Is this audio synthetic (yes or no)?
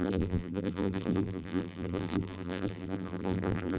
yes